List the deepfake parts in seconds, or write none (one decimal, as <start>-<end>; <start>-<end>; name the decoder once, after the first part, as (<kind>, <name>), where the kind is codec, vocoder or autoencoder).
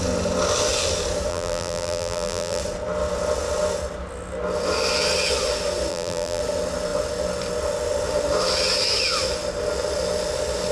1.3-2.6 (vocoder, BigVGAN v2); 5.9-6.4